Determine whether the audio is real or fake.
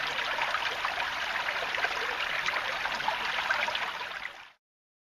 real